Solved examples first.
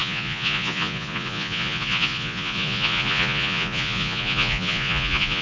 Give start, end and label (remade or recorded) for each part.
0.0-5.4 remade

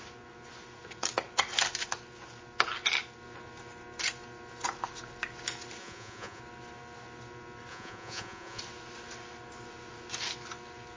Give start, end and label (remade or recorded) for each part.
0.0-5.8 recorded; 5.8-6.4 remade; 6.4-7.7 recorded; 7.7-8.6 remade; 8.6-11.0 recorded

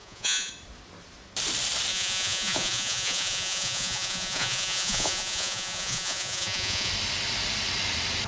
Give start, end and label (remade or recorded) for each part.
0.0-0.5 remade; 0.5-1.9 recorded; 1.9-6.9 remade; 6.9-8.3 recorded

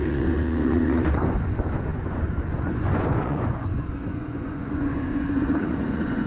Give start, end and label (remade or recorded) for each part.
0.0-6.3 remade